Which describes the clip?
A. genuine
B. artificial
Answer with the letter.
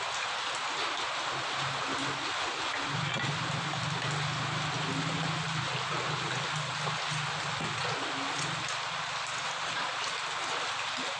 A